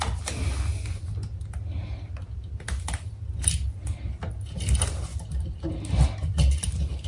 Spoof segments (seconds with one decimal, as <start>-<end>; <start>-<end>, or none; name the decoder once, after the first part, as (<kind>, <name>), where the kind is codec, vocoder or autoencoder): none